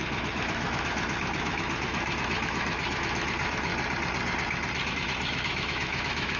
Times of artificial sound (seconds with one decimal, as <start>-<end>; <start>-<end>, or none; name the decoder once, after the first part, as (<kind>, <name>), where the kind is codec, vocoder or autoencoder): 0.0-3.7 (autoencoder, DAC-VAE); 4.9-6.4